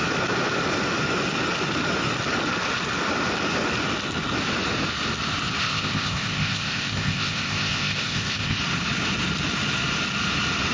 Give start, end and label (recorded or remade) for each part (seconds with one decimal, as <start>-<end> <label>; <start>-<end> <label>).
0.0-5.6 recorded; 5.6-8.6 remade; 8.6-10.7 recorded